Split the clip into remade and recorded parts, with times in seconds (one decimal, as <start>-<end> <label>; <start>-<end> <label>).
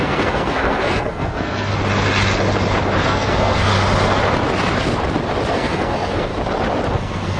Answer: 0.0-1.7 remade; 1.7-3.0 recorded; 3.0-3.7 remade; 3.7-5.5 recorded; 5.5-6.3 remade; 6.3-6.9 recorded; 6.9-7.4 remade